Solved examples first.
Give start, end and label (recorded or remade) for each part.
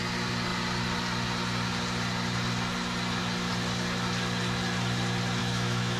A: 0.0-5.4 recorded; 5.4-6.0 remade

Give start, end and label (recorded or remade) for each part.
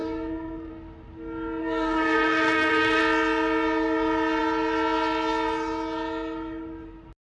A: 0.0-0.7 remade; 0.7-1.6 recorded; 1.6-3.0 remade; 3.0-7.3 recorded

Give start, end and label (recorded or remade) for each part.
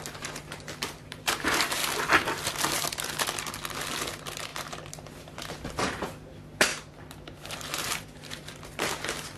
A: 0.0-1.8 remade; 1.8-4.1 recorded; 4.1-9.4 remade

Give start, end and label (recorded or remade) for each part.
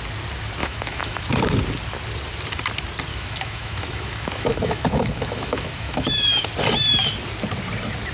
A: 0.0-0.6 recorded; 0.6-1.2 remade; 1.2-3.1 recorded; 3.1-6.4 remade; 6.4-8.1 recorded